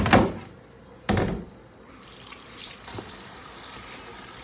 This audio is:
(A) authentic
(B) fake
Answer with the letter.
B